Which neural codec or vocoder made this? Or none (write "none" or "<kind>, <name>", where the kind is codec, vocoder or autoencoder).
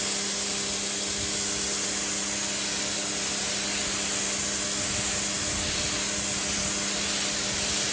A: none